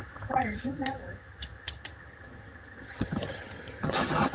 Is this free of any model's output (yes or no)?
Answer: no